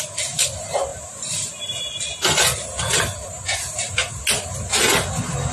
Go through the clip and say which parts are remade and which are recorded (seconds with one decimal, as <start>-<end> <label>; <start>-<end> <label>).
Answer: 0.0-5.5 recorded